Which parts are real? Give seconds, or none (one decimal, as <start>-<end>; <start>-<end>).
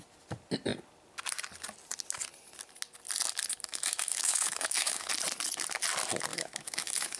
0.0-3.7; 5.1-6.3